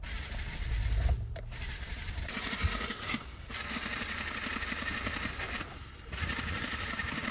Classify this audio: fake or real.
fake